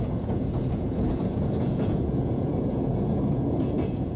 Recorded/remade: remade